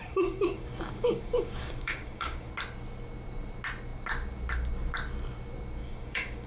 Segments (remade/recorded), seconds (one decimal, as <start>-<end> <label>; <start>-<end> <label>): 0.0-2.5 remade; 2.5-5.8 recorded; 5.8-6.5 remade